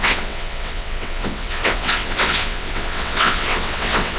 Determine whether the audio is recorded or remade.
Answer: remade